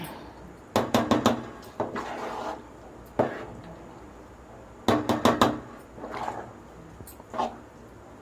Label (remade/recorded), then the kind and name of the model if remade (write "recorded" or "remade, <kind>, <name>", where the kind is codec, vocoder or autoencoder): recorded